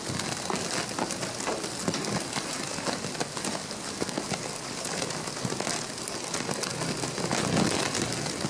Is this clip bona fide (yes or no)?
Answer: yes